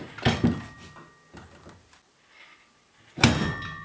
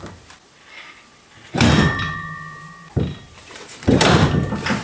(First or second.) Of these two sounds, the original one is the first